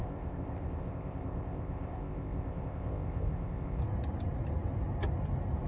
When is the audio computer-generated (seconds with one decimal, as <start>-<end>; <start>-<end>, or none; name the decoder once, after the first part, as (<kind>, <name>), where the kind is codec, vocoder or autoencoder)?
0.0-3.8 (codec, ZipCodec)